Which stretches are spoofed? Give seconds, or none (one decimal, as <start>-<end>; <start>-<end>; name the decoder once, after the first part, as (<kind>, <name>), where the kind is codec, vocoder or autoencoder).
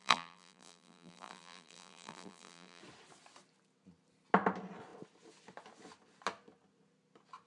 0.0-2.8 (vocoder, BigVGAN v2)